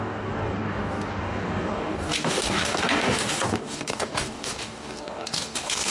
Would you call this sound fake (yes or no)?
yes